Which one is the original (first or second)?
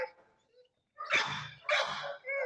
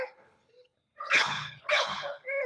first